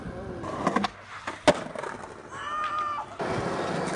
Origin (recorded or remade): recorded